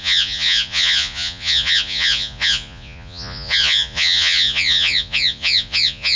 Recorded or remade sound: remade